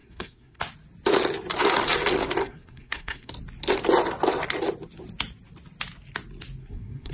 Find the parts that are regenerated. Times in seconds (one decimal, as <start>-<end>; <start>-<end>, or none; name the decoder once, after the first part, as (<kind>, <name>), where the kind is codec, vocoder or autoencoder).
0.0-0.6 (codec, SNAC); 2.4-3.3; 6.6-7.1